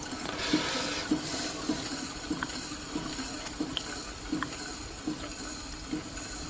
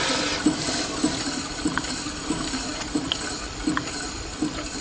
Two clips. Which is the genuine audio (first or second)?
first